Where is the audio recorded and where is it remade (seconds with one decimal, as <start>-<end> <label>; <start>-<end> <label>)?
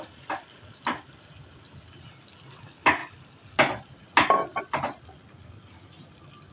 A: 0.0-6.5 recorded